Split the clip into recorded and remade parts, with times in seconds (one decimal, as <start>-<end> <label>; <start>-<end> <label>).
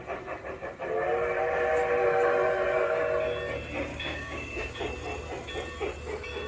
0.0-3.9 recorded; 3.9-4.8 remade; 4.8-6.5 recorded